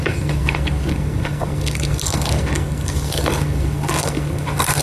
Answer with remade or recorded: remade